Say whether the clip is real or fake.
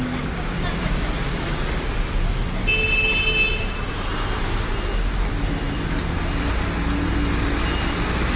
real